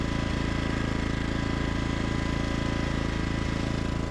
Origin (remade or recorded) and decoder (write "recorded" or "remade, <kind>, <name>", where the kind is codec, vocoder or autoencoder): recorded